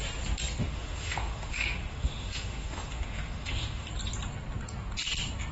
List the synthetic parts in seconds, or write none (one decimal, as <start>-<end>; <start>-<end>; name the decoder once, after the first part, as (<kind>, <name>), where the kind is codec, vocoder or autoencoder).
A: 0.6-3.9 (autoencoder, DAC-VAE)